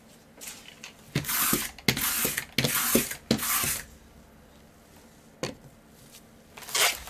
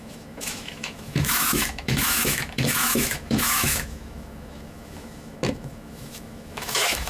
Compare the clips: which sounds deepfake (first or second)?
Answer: second